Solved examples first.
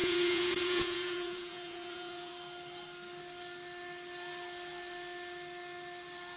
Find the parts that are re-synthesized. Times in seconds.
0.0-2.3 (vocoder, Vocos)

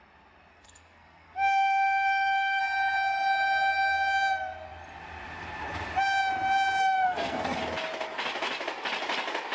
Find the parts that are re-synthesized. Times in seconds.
0.5-2.6 (codec, SNAC); 6.8-7.6